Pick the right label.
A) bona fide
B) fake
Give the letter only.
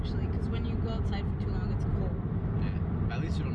A